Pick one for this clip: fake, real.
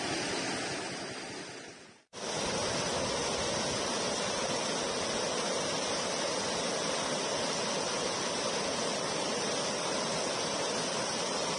real